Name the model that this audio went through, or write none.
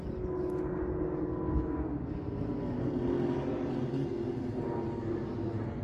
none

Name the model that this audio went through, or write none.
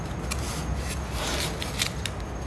none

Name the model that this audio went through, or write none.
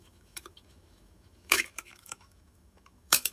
autoencoder, DAC-VAE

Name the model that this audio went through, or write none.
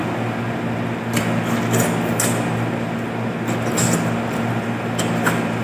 none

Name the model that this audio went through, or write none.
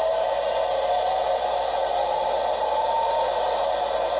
none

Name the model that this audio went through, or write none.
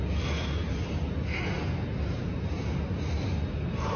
none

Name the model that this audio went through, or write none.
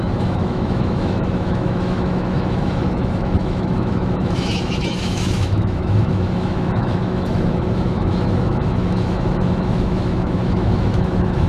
autoencoder, DAC-VAE